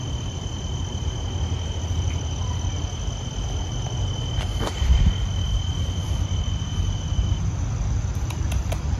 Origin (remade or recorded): recorded